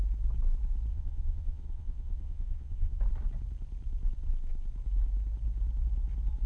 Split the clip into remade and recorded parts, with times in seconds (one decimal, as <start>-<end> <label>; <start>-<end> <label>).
0.0-0.9 recorded; 0.9-3.0 remade; 3.0-6.5 recorded